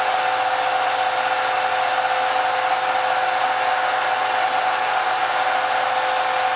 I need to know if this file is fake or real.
real